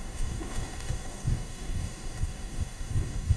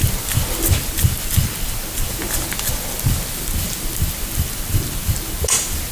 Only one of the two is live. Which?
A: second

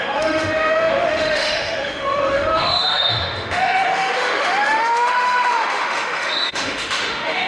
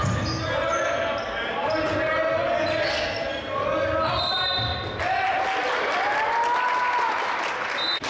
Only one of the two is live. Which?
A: second